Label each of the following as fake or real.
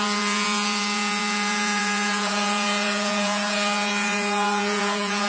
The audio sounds fake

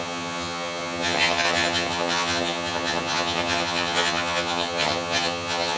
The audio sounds fake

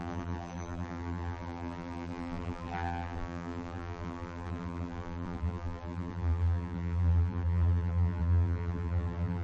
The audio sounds fake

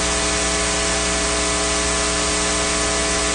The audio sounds real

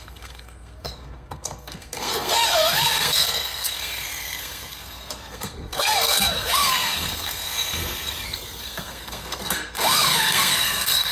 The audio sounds fake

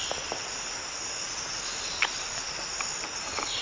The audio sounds real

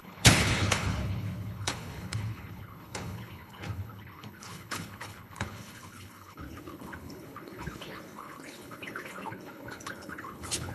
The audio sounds fake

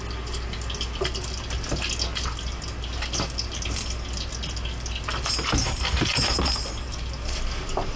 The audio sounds real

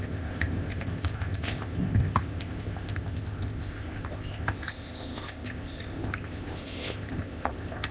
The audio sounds fake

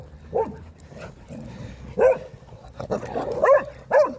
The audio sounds real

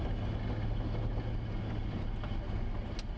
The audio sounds real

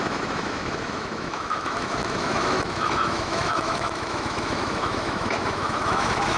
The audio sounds fake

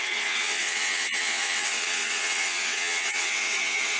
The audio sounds fake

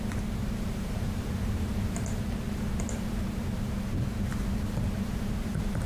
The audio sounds fake